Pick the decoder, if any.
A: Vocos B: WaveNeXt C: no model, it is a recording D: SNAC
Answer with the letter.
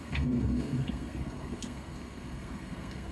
D